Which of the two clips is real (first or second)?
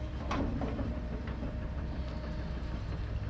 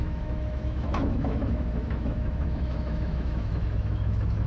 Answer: first